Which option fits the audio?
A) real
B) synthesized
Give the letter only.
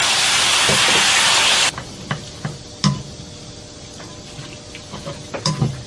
A